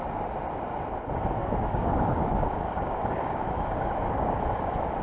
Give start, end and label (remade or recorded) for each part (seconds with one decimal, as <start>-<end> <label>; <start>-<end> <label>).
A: 0.0-1.4 recorded; 1.4-4.4 remade; 4.4-5.0 recorded